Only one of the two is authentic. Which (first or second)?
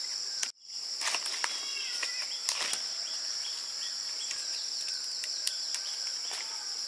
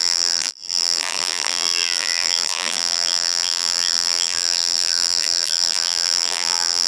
first